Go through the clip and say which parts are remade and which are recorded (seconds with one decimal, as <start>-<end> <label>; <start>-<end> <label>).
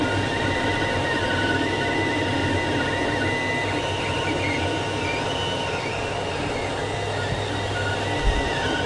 0.0-8.9 recorded